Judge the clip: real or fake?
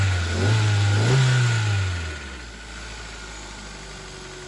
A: real